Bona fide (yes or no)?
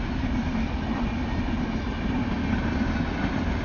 yes